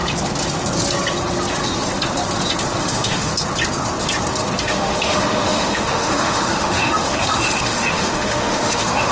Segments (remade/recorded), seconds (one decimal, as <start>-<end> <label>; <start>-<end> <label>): 0.0-2.8 recorded; 2.8-3.3 remade; 3.3-4.6 recorded; 4.6-9.1 remade